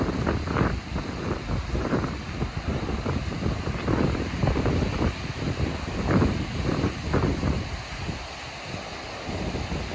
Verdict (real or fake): real